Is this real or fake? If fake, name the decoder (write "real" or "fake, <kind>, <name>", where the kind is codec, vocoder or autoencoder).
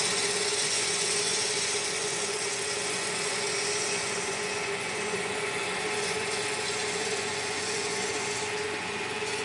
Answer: fake, vocoder, Vocos